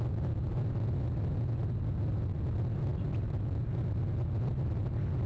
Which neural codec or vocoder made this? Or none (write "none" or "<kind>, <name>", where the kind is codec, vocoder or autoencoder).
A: none